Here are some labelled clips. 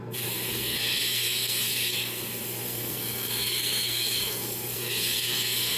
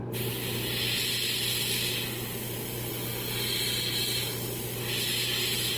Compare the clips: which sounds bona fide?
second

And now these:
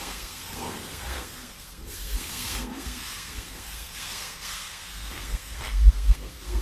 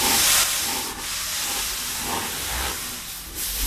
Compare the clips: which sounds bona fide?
second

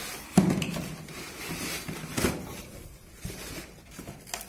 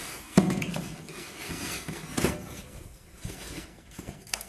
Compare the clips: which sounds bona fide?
first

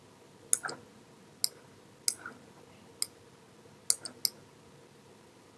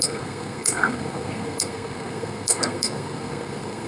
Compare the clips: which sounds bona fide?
first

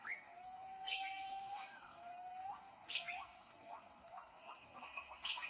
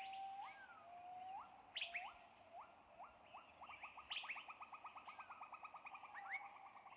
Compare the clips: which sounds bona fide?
second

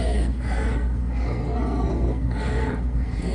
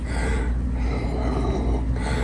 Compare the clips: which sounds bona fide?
second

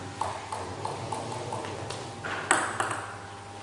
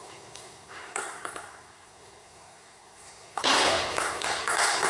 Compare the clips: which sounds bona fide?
first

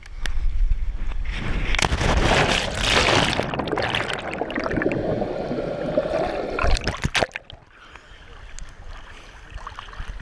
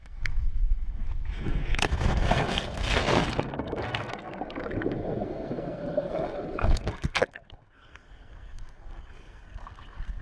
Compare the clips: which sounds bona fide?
first